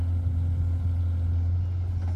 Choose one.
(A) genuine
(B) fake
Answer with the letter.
A